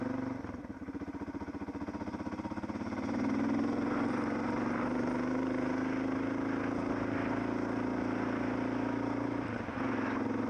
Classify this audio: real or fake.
real